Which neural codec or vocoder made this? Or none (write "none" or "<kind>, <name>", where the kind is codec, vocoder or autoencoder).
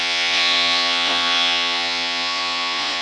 vocoder, Vocos